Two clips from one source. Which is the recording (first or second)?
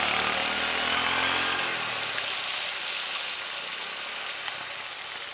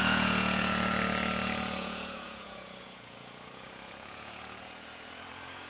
first